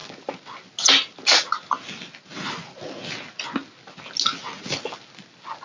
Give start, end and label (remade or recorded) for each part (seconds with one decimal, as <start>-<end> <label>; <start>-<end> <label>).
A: 0.0-5.6 recorded